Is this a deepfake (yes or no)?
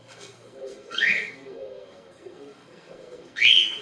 yes